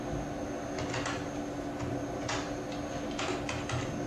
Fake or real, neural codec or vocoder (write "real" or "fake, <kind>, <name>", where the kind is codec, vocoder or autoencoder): real